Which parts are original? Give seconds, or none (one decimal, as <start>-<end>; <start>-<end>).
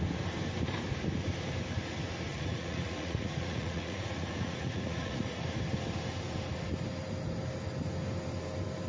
0.0-2.3; 5.4-8.9